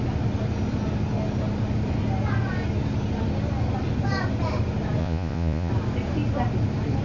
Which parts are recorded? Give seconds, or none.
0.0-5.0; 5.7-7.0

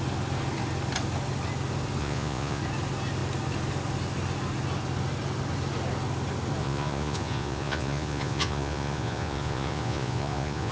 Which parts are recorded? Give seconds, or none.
0.0-2.0; 2.6-6.6

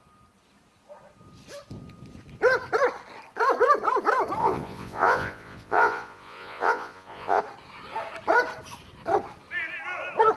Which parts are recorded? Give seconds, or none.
0.0-4.4; 7.4-10.4

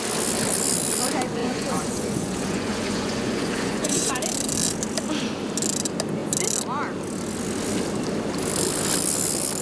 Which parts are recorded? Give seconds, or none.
0.0-1.4; 4.1-9.6

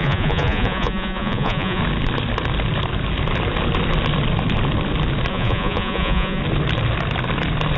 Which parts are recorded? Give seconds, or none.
1.8-5.3; 6.4-7.8